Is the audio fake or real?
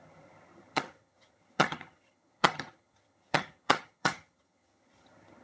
fake